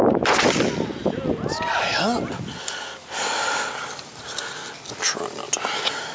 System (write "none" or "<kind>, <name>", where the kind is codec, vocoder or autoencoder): none